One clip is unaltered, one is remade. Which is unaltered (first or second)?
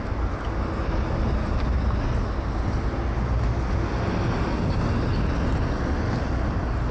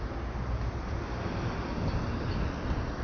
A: first